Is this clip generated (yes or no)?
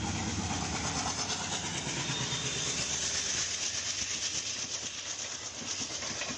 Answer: no